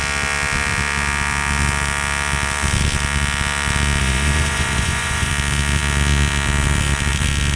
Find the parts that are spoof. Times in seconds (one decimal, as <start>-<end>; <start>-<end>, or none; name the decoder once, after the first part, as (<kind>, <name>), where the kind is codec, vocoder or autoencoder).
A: 4.0-5.3 (vocoder, Vocos)